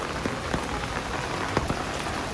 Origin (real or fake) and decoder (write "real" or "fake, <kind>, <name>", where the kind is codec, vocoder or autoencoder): real